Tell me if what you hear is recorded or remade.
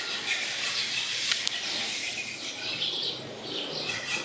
recorded